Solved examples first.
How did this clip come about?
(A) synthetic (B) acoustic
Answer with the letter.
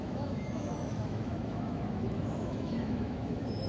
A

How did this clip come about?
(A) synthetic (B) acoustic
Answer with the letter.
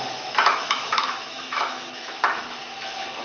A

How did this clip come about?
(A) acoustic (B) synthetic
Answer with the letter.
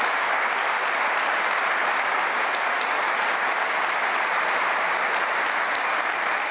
A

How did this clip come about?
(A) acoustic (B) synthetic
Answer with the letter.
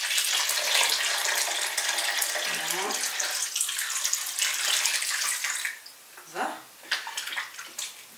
A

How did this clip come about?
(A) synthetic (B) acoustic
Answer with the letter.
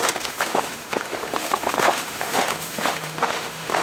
A